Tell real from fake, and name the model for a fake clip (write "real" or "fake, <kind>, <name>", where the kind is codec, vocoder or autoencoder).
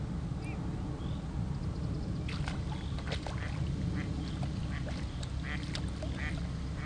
real